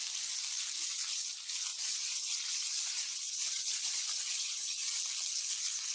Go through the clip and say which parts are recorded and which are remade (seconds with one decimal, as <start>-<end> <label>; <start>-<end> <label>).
0.0-1.7 recorded; 1.7-5.0 remade; 5.0-5.9 recorded